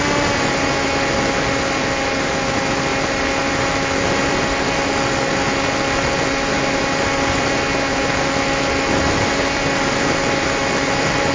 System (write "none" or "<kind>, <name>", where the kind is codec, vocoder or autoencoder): none